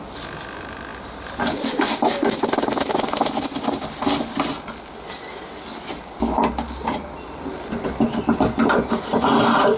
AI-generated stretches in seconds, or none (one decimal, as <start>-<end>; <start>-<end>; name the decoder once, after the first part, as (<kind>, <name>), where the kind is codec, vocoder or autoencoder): none